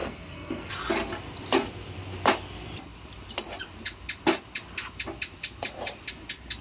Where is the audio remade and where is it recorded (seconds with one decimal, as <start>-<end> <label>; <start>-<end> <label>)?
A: 0.0-0.7 remade; 0.7-6.6 recorded